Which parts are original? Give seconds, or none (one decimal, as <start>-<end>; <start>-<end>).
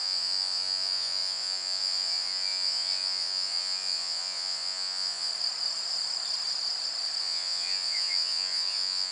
5.3-7.2